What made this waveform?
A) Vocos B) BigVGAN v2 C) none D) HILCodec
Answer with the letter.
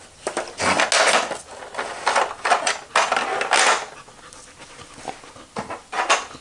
C